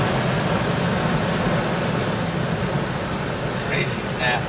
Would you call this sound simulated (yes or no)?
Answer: no